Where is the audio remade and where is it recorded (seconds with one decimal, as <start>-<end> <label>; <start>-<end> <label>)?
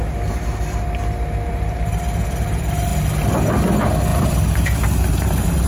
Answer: 0.0-1.5 recorded; 1.5-2.0 remade; 2.0-4.1 recorded; 4.1-5.7 remade